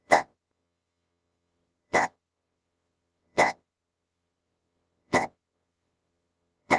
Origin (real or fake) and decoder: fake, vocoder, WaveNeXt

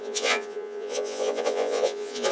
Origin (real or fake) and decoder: fake, vocoder, Vocos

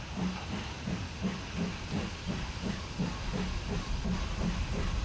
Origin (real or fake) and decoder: real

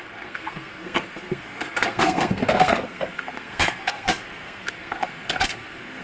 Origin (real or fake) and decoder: fake, codec, SNAC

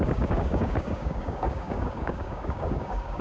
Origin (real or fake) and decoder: fake, codec, DAC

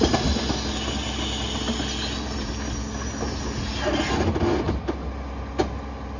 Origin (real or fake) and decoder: real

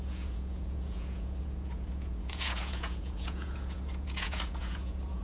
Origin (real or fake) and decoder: fake, vocoder, Vocos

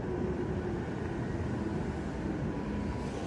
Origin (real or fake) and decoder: real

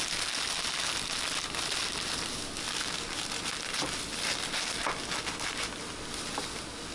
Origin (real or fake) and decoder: real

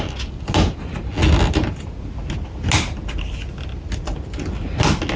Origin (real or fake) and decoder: real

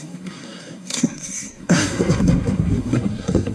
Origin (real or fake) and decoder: fake, codec, SNAC